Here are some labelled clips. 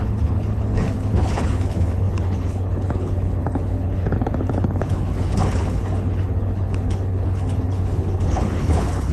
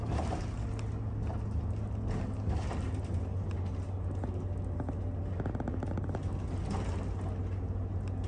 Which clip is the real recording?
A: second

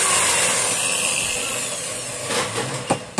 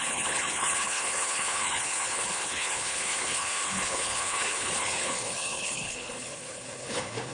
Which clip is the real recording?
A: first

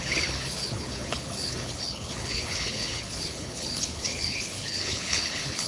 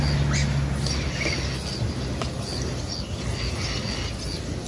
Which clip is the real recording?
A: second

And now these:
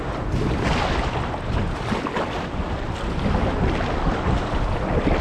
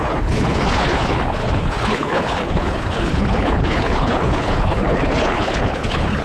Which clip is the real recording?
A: first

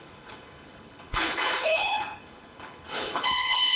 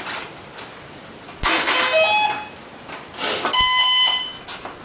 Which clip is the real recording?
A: second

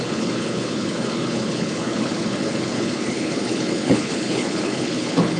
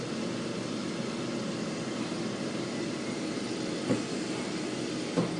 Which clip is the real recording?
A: second